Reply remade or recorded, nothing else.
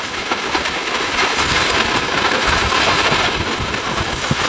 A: recorded